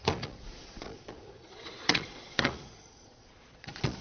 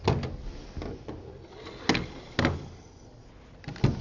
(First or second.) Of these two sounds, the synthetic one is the first